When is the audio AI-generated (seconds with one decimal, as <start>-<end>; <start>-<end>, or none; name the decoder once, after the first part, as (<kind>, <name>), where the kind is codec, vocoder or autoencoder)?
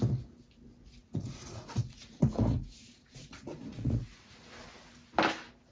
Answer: 1.0-4.4 (vocoder, Vocos)